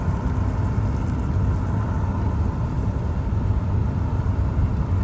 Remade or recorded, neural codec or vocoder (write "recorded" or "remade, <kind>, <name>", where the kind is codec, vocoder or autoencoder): recorded